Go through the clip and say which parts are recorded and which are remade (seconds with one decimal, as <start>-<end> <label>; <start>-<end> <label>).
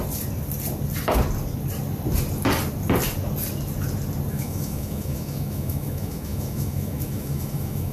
0.0-4.3 recorded; 4.3-7.9 remade